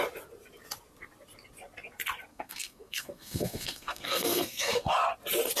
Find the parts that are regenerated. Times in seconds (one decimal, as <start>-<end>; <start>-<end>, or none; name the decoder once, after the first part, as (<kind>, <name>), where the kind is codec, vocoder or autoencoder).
2.3-4.9 (codec, SNAC)

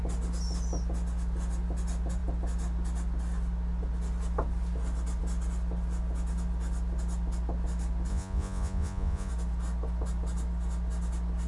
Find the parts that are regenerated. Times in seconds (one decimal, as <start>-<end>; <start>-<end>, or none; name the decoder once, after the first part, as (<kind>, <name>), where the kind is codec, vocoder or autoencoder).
8.1-9.3 (vocoder, Vocos)

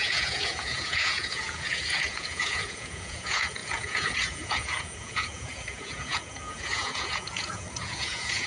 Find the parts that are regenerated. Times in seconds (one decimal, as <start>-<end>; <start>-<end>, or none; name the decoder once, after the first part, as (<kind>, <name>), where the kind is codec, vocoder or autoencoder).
0.0-8.5 (vocoder, Vocos)

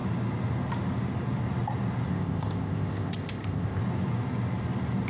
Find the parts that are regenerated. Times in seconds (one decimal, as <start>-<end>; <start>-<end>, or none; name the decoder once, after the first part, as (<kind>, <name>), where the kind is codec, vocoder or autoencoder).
2.1-3.8 (codec, ZipCodec)

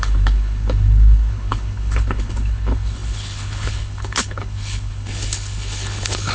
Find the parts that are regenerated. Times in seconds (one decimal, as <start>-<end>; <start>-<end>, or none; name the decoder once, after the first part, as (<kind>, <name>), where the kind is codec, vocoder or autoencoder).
0.0-6.3 (codec, HILCodec)

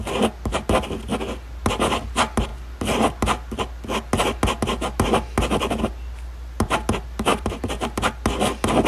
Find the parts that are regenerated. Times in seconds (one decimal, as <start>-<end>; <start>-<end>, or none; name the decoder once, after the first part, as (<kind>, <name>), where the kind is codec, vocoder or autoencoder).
7.3-8.1 (vocoder, BigVGAN v2)

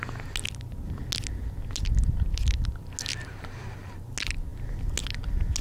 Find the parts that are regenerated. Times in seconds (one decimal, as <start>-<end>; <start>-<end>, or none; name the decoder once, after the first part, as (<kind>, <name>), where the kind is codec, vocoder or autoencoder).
3.1-3.9 (vocoder, BigVGAN v2)

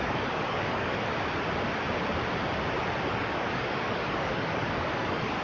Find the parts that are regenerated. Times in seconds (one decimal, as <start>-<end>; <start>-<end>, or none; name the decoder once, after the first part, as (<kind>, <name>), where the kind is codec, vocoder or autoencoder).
0.0-1.1 (codec, DAC); 3.1-5.4